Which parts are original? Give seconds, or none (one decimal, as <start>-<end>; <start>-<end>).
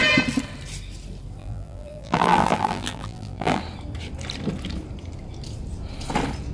0.0-1.4; 3.6-6.5